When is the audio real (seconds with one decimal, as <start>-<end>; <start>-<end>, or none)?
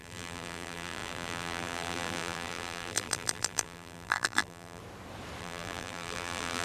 4.8-5.4